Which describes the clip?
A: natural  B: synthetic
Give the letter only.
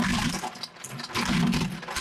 A